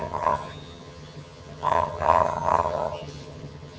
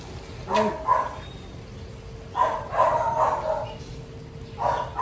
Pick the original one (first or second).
second